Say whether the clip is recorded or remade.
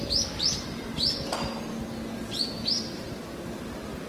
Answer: recorded